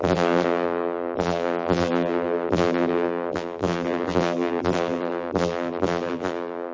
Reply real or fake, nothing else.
fake